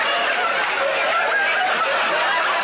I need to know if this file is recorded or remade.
recorded